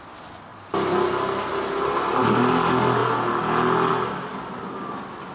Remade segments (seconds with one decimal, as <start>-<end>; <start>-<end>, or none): none